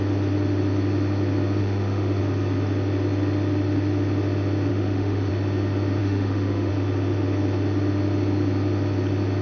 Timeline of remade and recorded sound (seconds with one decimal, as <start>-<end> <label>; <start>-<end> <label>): 0.0-1.6 recorded; 1.6-2.2 remade; 2.2-4.7 recorded; 4.7-5.3 remade; 5.3-6.0 recorded; 6.0-6.7 remade; 6.7-9.4 recorded